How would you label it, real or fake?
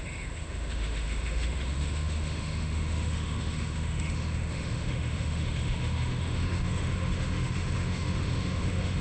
fake